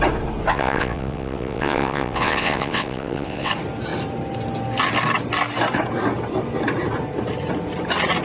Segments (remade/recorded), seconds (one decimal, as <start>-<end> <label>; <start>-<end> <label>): 0.0-0.5 recorded; 0.5-3.5 remade; 3.5-8.2 recorded